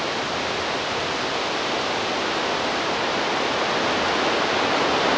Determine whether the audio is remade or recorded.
recorded